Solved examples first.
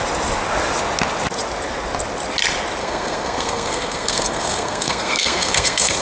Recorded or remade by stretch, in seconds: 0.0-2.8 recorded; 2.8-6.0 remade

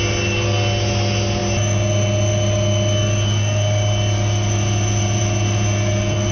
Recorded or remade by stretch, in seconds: 0.0-6.3 recorded